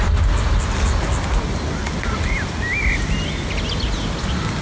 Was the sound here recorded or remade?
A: recorded